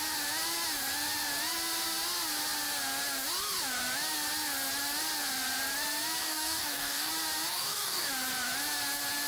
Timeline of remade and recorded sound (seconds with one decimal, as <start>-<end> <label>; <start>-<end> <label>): 0.0-6.2 recorded; 6.2-7.1 remade; 7.1-7.5 recorded; 7.5-8.1 remade; 8.1-9.3 recorded